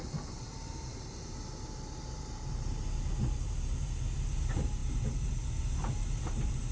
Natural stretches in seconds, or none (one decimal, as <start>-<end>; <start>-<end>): 1.4-3.3; 4.8-5.6